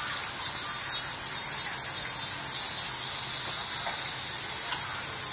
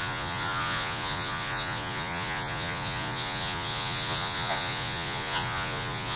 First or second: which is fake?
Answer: second